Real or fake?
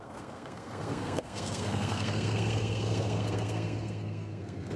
fake